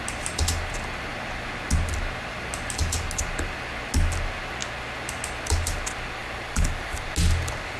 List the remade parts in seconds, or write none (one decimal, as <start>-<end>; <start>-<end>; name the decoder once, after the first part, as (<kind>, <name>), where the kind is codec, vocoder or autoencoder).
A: 6.2-7.1 (vocoder, BigVGAN v2)